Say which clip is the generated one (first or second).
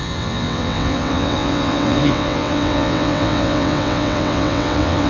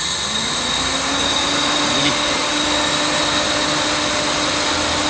first